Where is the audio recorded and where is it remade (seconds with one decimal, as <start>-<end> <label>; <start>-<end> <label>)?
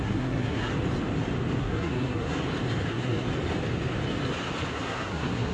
0.0-0.7 remade; 0.7-1.6 recorded; 1.6-2.4 remade; 2.4-2.9 recorded; 2.9-3.3 remade; 3.3-4.7 recorded; 4.7-5.5 remade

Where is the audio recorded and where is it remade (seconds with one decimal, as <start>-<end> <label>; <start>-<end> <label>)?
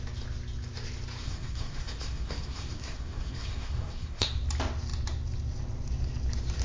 0.0-1.2 recorded; 1.2-4.3 remade; 4.3-6.6 recorded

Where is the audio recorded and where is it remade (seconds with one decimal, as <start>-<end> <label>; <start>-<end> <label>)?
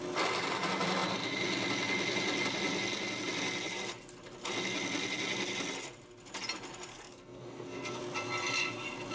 0.0-6.9 recorded; 6.9-8.0 remade; 8.0-9.1 recorded